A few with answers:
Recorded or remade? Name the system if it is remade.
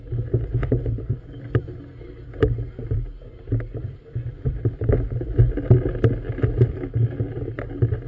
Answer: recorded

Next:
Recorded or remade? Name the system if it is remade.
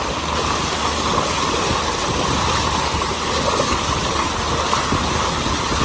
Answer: recorded